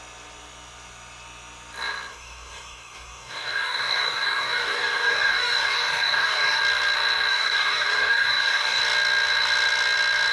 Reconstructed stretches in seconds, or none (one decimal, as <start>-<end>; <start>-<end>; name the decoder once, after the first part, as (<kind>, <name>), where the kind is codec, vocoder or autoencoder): 2.1-6.6 (codec, DAC); 7.3-8.8